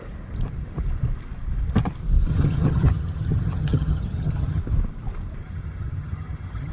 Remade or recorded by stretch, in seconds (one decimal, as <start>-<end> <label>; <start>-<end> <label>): 0.0-2.3 recorded; 2.3-4.6 remade; 4.6-5.4 recorded; 5.4-6.7 remade